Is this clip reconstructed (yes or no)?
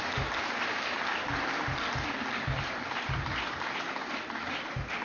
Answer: no